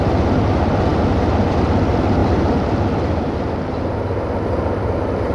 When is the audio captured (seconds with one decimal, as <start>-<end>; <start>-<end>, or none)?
0.0-5.3